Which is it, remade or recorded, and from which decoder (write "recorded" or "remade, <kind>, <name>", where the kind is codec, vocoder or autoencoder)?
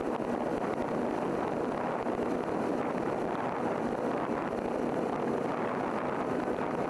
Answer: recorded